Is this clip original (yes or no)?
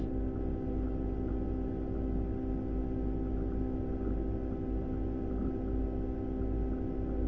yes